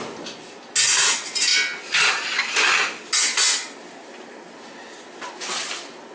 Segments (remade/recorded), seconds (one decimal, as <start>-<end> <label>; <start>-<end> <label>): 0.0-6.1 recorded